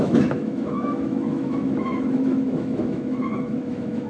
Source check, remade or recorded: remade